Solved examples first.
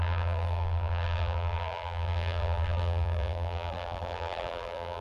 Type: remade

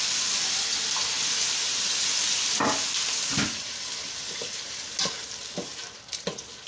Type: recorded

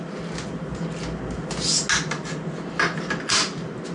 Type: recorded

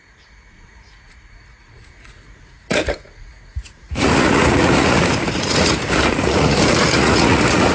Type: remade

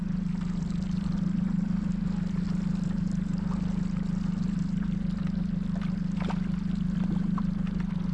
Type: recorded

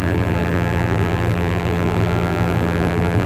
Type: remade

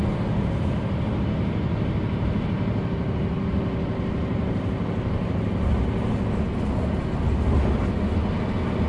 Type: recorded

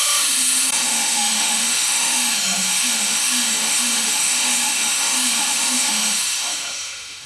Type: remade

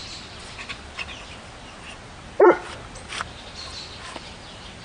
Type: recorded